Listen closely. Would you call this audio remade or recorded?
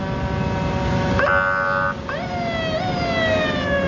recorded